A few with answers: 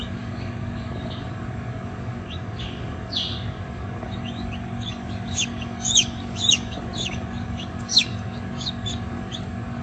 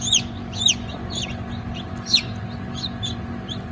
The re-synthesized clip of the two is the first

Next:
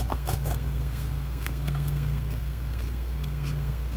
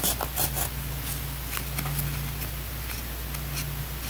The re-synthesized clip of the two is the first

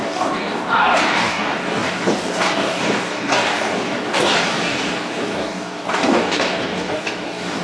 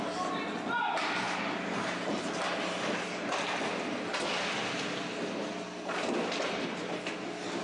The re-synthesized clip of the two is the first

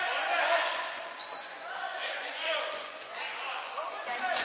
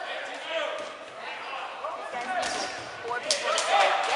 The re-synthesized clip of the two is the first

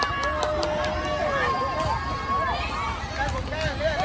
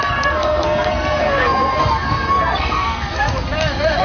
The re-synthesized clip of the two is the second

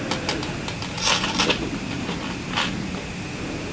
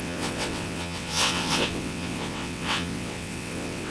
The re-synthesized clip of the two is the second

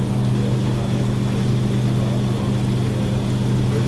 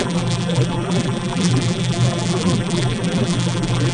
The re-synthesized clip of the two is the second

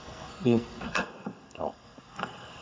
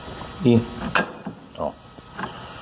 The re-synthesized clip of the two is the first